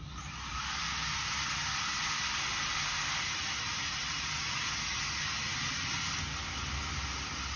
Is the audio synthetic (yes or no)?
no